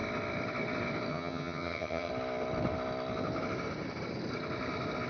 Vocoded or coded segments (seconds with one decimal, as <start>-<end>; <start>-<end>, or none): 1.1-2.1